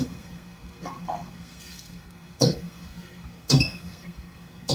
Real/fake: fake